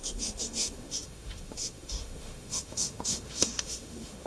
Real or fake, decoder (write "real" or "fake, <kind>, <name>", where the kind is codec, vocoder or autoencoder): fake, autoencoder, DAC-VAE